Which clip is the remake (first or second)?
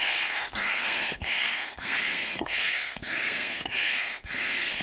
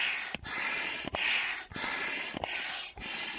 first